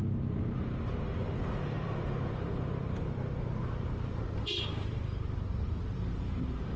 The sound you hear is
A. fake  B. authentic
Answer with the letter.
A